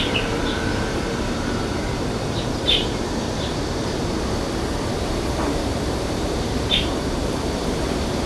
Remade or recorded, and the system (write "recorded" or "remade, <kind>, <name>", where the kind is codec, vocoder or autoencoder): remade, vocoder, BigVGAN v2